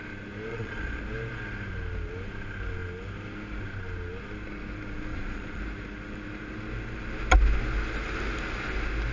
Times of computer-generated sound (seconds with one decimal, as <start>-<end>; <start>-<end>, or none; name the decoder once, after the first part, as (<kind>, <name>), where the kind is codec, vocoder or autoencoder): 0.5-1.0 (vocoder, Vocos); 5.1-5.6